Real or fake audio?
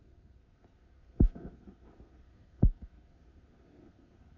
fake